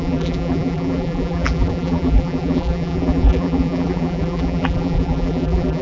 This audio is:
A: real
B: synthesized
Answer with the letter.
B